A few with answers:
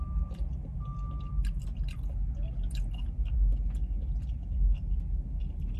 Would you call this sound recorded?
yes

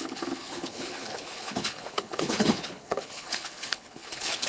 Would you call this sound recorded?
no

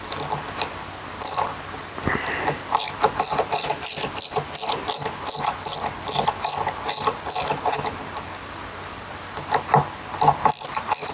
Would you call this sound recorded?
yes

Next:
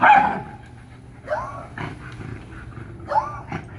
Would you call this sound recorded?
yes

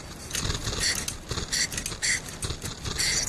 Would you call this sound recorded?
yes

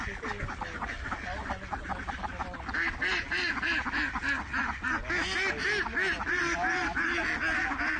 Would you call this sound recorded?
yes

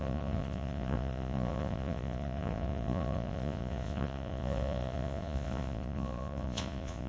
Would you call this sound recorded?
no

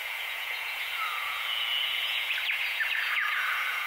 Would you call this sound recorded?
no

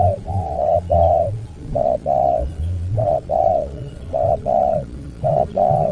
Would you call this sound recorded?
no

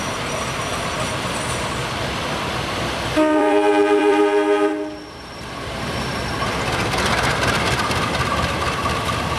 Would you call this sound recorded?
no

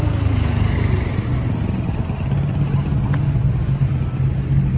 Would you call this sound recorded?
yes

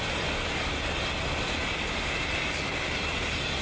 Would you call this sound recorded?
yes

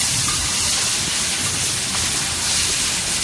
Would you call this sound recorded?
yes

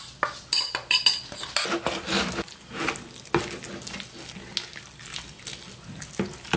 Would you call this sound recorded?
yes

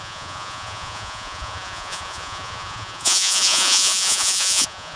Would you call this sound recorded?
no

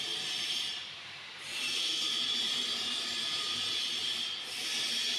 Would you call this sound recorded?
no